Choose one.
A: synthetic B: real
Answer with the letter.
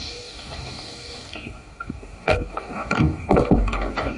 A